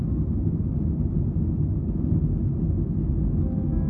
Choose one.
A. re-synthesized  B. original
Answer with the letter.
B